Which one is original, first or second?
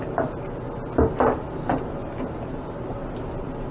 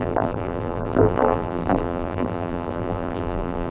first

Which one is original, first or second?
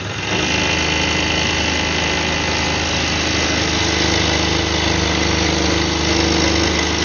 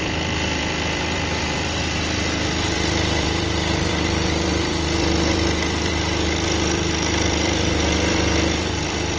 first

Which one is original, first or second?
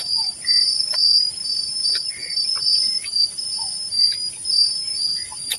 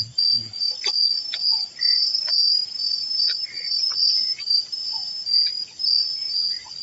second